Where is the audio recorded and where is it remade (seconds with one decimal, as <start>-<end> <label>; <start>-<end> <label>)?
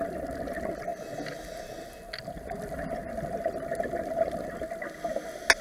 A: 0.0-5.6 recorded